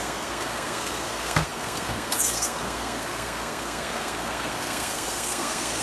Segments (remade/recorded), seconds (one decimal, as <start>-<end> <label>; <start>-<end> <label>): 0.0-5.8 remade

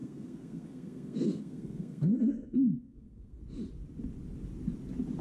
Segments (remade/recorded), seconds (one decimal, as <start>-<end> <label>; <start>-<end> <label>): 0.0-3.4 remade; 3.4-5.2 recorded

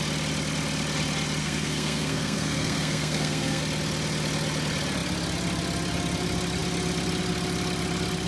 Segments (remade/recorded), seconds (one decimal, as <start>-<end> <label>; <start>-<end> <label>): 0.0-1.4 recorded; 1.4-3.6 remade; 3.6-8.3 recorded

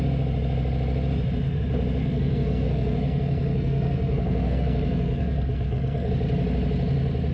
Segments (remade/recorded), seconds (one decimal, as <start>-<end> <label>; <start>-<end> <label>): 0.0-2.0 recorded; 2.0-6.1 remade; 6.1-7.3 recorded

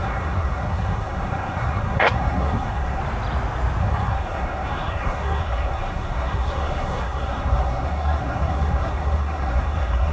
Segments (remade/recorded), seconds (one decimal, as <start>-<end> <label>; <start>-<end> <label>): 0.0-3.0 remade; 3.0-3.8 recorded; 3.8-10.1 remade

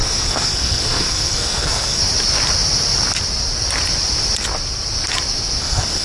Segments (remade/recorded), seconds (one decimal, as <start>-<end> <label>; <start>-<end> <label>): 0.0-2.0 remade; 2.0-5.6 recorded; 5.6-6.0 remade

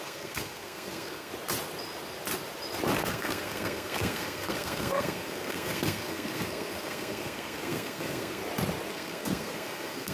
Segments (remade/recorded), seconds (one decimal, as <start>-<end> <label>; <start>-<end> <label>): 0.0-1.3 remade; 1.3-3.0 recorded; 3.0-8.4 remade; 8.4-8.9 recorded; 8.9-10.1 remade

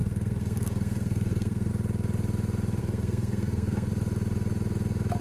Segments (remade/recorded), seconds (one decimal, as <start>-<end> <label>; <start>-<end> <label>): 0.0-1.7 remade; 1.7-2.8 recorded; 2.8-3.9 remade; 3.9-5.2 recorded